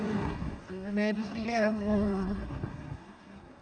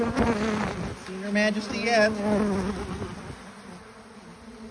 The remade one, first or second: first